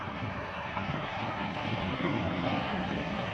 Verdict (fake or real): fake